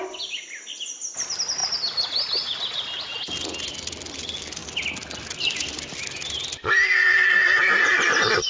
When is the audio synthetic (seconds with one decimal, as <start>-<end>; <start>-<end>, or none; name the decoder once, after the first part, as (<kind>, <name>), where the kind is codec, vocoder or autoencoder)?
none